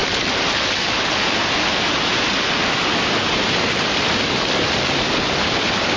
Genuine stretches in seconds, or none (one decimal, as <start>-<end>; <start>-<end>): 0.0-6.0